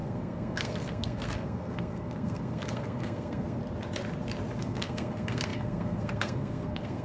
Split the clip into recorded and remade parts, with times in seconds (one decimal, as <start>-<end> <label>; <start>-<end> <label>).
0.0-3.6 remade; 3.6-4.6 recorded; 4.6-7.0 remade